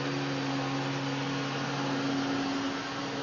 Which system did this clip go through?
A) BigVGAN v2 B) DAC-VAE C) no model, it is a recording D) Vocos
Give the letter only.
C